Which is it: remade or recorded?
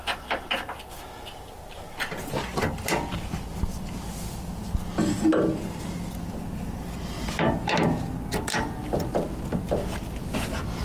recorded